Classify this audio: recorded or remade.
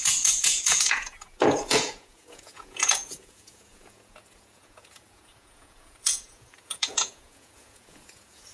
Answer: remade